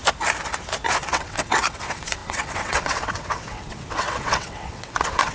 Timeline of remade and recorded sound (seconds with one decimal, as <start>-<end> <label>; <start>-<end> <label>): 0.0-1.0 recorded; 1.0-5.3 remade